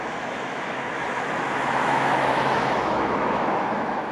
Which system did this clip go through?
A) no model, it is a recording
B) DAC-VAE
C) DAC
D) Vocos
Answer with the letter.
B